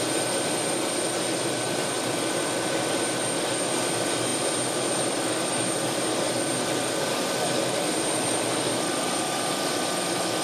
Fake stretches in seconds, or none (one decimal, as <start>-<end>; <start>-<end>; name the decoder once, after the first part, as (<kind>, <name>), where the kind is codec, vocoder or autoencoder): none